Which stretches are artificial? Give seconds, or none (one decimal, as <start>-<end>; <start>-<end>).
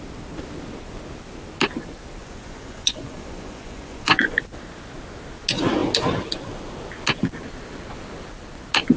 2.2-4.4